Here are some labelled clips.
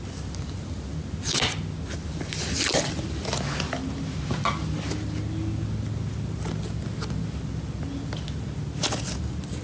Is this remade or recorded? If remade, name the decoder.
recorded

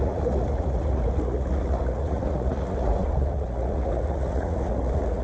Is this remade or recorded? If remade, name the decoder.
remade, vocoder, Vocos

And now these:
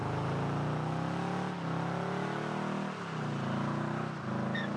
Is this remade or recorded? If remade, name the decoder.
recorded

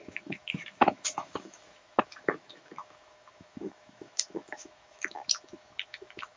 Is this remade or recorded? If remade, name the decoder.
remade, autoencoder, DAC-VAE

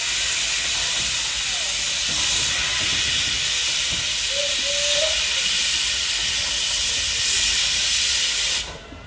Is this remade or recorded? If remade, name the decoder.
recorded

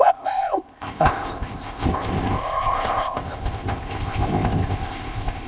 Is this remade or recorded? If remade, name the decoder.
remade, codec, ZipCodec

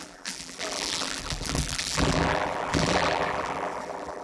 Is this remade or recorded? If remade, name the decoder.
remade, vocoder, BigVGAN v2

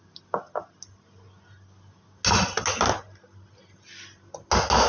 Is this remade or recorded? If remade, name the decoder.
recorded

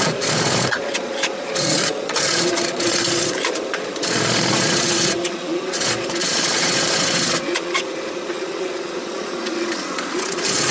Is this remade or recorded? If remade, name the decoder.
remade, vocoder, Vocos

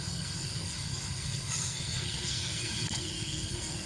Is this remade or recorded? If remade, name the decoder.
remade, codec, SNAC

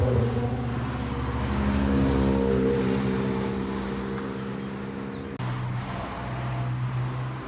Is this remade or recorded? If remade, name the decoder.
recorded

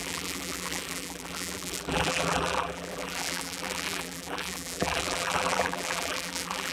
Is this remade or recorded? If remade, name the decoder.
remade, vocoder, BigVGAN v2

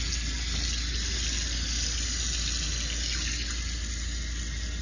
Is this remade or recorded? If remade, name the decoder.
recorded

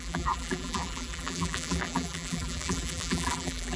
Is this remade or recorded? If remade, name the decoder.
remade, vocoder, BigVGAN v2